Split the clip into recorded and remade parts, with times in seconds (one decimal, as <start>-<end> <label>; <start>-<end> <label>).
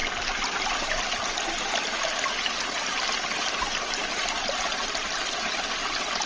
0.0-6.3 recorded